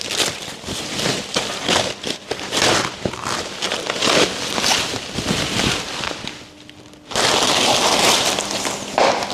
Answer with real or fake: real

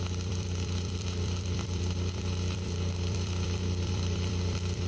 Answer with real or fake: fake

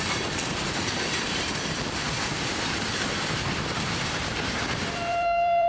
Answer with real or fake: fake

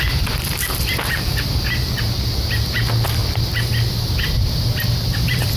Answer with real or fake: fake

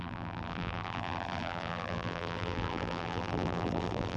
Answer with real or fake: fake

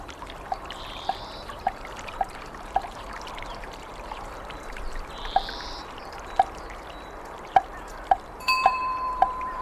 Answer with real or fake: fake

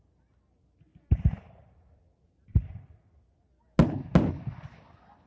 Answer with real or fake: real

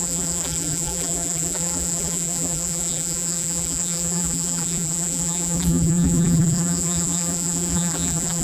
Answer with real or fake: fake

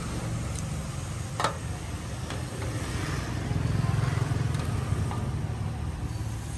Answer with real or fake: real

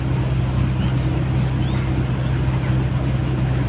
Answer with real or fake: real